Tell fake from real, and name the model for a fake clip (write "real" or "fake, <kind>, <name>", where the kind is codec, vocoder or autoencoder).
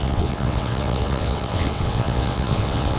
fake, vocoder, WaveNeXt